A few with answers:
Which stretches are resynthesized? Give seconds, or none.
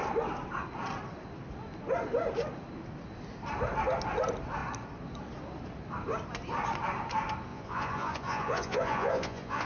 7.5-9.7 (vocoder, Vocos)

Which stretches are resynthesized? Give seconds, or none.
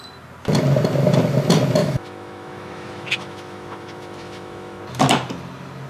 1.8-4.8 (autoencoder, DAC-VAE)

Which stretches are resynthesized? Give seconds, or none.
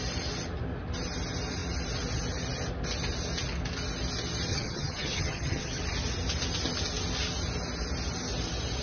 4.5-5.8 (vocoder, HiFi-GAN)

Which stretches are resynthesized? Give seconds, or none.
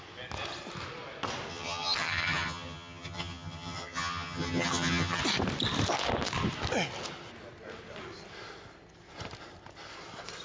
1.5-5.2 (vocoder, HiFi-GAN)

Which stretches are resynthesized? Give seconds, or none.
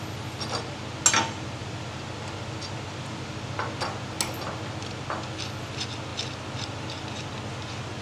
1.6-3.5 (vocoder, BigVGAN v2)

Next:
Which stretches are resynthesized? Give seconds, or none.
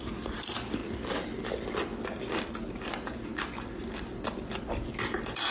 0.0-0.8 (vocoder, BigVGAN v2); 2.5-5.5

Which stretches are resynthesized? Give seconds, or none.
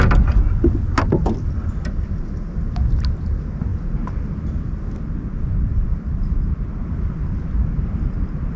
none